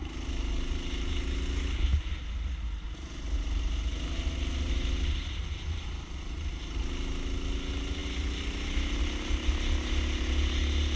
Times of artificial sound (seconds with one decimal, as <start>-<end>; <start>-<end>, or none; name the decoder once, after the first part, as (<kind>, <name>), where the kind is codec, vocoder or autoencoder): none

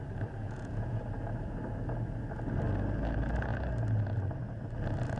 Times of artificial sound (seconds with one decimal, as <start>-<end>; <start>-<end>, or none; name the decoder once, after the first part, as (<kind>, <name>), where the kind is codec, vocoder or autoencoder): 0.4-1.0 (vocoder, Vocos)

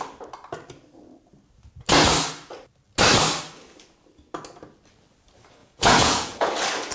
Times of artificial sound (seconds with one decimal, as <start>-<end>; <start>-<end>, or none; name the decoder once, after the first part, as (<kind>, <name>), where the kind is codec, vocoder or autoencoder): 5.6-6.5 (vocoder, Vocos)

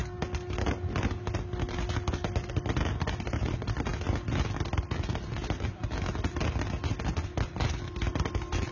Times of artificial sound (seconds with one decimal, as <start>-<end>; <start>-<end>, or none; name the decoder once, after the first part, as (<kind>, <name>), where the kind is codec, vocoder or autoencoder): none

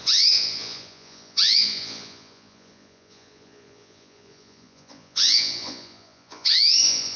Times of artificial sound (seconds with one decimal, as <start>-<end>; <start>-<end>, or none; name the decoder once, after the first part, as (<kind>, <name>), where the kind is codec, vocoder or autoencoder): 0.0-7.2 (vocoder, Vocos)